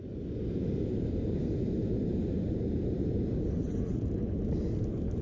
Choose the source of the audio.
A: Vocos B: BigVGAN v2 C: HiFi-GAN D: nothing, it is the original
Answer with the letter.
B